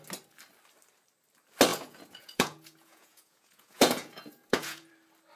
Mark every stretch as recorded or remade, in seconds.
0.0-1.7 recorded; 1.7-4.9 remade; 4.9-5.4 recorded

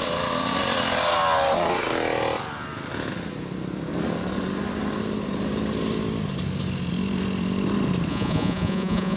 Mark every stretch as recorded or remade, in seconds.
0.0-8.1 recorded; 8.1-9.2 remade

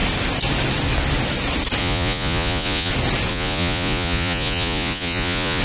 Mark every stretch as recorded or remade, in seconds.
0.0-1.8 recorded; 1.8-2.9 remade; 2.9-3.3 recorded; 3.3-5.6 remade

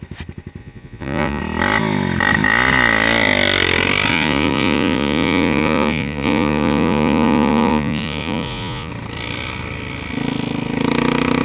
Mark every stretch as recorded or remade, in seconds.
0.0-0.6 recorded; 0.6-1.4 remade; 1.4-4.1 recorded; 4.1-8.9 remade; 8.9-11.4 recorded

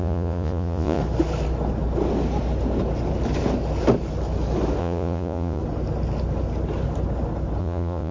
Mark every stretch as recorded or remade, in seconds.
0.0-1.0 remade; 1.0-4.8 recorded; 4.8-5.6 remade; 5.6-7.6 recorded; 7.6-8.1 remade

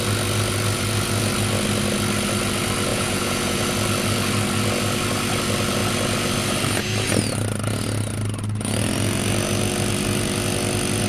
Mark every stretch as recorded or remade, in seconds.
0.0-2.9 recorded; 2.9-3.6 remade; 3.6-11.1 recorded

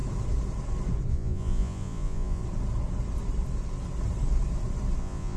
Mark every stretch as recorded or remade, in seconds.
0.0-1.1 recorded; 1.1-2.4 remade; 2.4-5.0 recorded; 5.0-5.4 remade